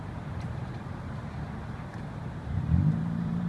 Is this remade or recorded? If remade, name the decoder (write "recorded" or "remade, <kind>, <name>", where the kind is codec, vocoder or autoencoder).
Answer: remade, vocoder, BigVGAN v2